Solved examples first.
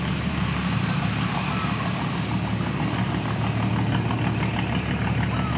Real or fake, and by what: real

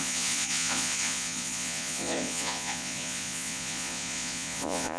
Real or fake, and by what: fake, vocoder, Vocos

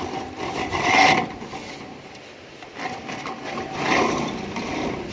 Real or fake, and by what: real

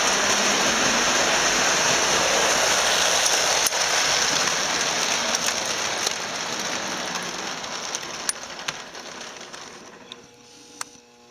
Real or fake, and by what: real